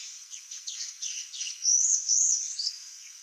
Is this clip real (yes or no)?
no